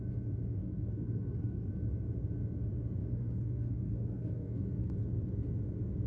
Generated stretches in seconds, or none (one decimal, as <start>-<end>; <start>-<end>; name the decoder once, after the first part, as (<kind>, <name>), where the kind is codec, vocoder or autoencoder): 0.6-1.7 (codec, SNAC); 3.0-4.9